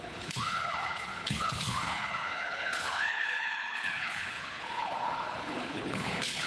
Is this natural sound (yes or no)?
no